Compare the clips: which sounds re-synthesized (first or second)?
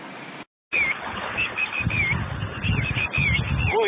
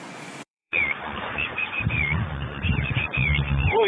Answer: second